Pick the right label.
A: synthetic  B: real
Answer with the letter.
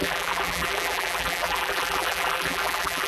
A